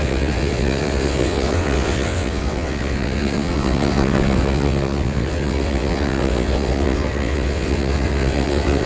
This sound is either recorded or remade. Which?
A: remade